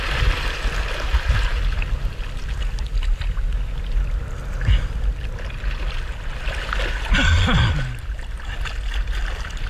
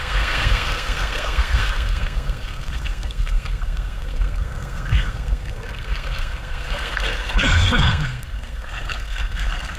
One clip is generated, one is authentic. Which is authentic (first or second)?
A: first